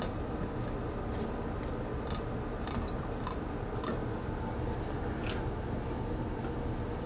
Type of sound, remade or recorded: recorded